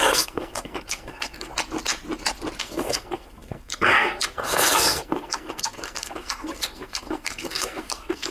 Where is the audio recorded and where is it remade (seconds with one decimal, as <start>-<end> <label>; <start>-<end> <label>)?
0.0-1.5 remade; 1.5-2.6 recorded; 2.6-8.3 remade